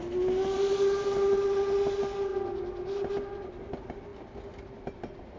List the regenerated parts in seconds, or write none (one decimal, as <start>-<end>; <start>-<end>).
none